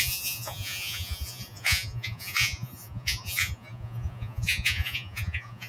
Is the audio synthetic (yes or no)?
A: yes